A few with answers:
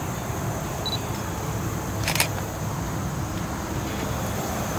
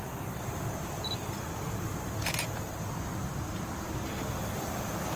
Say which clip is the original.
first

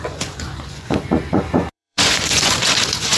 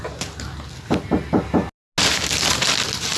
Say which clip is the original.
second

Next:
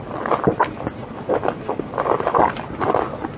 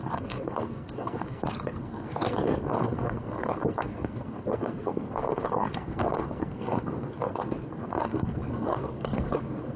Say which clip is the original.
first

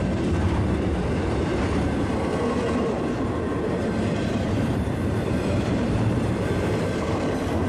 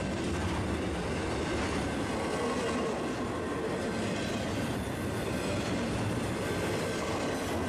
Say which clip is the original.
second